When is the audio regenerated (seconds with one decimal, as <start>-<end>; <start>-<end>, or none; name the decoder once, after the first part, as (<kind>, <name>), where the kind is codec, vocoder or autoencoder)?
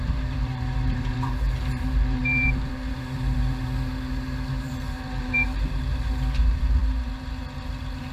0.0-8.1 (vocoder, BigVGAN v2)